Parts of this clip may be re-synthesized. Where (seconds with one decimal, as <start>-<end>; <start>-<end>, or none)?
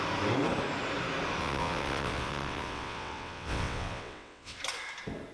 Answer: 1.4-4.6